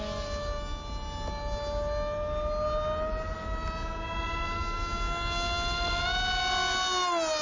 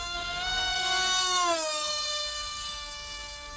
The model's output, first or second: second